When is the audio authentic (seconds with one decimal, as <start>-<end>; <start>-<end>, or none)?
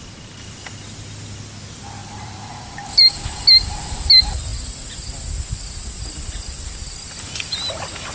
0.0-2.0; 3.2-8.1